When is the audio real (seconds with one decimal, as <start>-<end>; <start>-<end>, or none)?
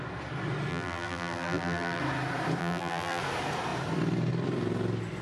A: 0.0-0.7; 2.0-2.6; 3.2-5.2